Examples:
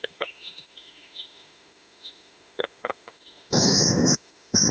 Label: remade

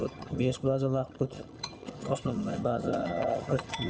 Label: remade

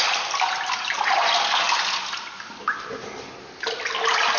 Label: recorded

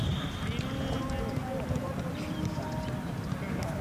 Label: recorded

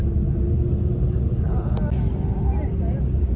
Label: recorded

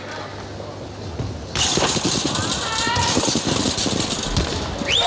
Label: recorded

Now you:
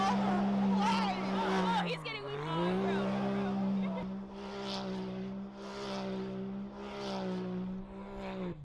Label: recorded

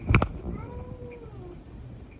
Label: recorded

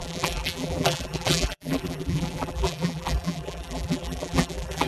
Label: remade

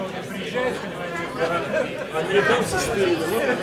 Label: recorded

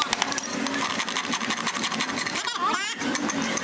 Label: recorded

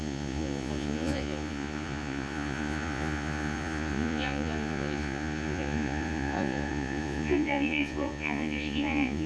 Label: remade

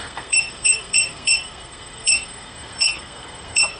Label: remade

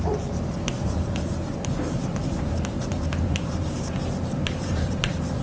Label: remade